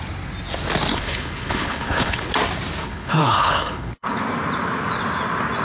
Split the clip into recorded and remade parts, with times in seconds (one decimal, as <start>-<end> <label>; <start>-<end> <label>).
0.0-0.9 recorded; 0.9-2.3 remade; 2.3-2.8 recorded; 2.8-4.2 remade; 4.2-5.6 recorded